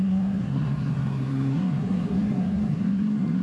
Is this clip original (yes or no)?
no